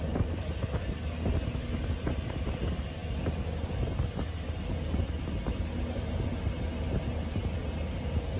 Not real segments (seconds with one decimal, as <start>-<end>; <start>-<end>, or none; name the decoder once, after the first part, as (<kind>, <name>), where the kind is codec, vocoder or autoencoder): none